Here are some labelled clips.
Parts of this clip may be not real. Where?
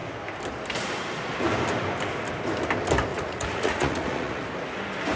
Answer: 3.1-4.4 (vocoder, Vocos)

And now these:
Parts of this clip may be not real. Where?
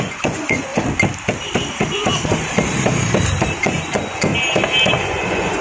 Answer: 0.0-0.7 (vocoder, Vocos); 3.6-4.3; 4.9-5.6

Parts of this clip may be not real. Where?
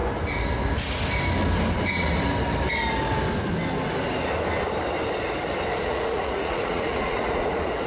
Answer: 1.7-2.1 (vocoder, Vocos); 5.8-7.9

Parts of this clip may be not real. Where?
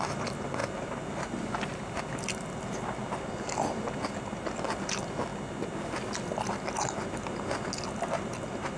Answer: none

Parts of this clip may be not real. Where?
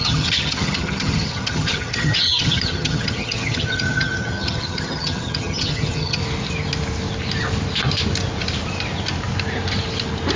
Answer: 0.0-6.2 (vocoder, HiFi-GAN)